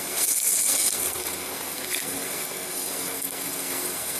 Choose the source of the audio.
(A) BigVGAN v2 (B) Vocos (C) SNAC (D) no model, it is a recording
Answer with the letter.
C